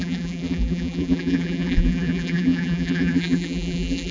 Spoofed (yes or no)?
yes